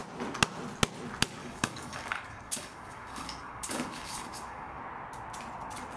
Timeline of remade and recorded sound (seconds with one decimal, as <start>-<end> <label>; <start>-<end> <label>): 0.0-1.4 recorded; 1.4-4.8 remade; 4.8-6.0 recorded